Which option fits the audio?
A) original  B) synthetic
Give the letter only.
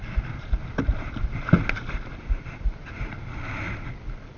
A